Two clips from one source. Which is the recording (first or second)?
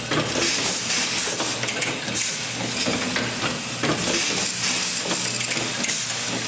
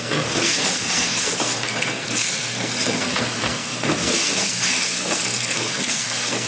first